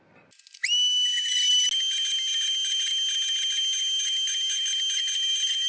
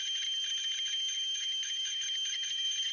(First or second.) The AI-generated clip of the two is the second